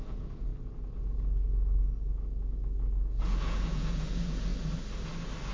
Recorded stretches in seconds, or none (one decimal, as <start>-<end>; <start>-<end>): 0.5-3.2; 4.5-5.5